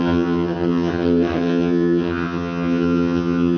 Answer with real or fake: fake